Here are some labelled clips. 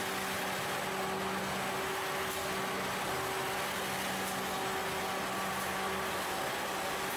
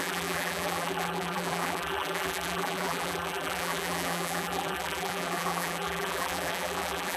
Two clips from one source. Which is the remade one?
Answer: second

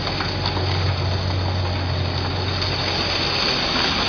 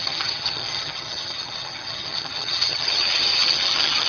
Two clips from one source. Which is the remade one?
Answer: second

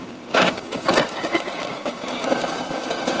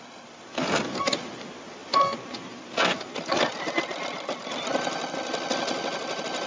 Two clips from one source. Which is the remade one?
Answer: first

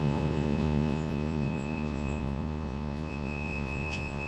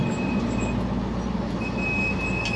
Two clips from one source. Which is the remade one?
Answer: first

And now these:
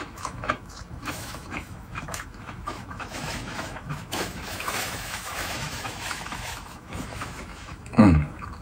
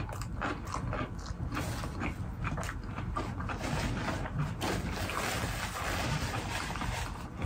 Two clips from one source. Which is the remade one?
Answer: first